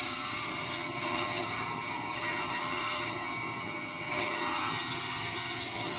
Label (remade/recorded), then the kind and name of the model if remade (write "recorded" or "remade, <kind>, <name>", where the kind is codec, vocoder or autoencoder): remade, vocoder, HiFi-GAN